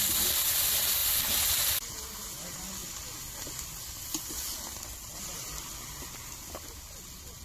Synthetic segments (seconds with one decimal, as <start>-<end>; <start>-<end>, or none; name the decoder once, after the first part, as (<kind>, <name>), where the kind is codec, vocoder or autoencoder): none